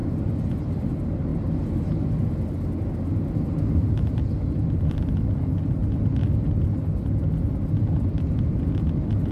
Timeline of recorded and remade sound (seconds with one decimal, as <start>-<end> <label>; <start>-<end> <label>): 0.0-0.6 recorded; 0.6-1.3 remade; 1.3-4.9 recorded; 4.9-5.8 remade; 5.8-7.5 recorded; 7.5-9.3 remade